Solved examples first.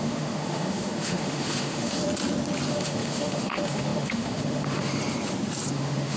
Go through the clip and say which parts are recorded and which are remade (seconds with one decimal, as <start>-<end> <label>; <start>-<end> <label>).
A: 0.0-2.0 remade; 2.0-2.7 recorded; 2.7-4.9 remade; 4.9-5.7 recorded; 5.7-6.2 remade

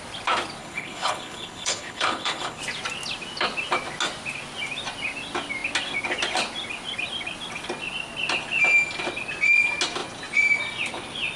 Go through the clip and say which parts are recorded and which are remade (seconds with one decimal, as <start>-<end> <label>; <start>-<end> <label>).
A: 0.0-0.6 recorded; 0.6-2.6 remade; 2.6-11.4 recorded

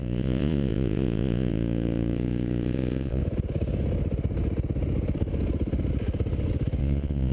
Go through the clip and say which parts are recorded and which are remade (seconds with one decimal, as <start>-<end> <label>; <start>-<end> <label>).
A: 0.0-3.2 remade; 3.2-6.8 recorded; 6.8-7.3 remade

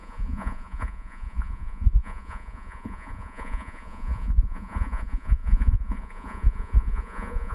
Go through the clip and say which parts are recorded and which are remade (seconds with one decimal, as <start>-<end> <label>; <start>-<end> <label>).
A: 0.0-7.5 remade

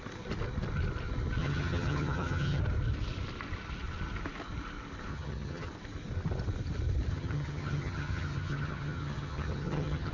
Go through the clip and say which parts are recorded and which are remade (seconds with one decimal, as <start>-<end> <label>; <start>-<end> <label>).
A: 0.0-1.4 recorded; 1.4-2.6 remade; 2.6-5.1 recorded; 5.1-5.7 remade; 5.7-7.1 recorded; 7.1-10.1 remade

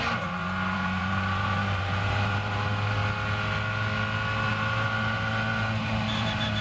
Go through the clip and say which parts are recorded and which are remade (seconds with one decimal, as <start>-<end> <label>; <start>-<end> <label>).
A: 0.0-3.0 remade; 3.0-4.5 recorded; 4.5-6.6 remade

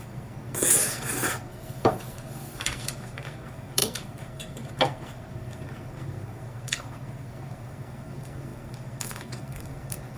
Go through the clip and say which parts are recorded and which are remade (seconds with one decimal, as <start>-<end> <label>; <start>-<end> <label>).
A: 0.0-10.2 remade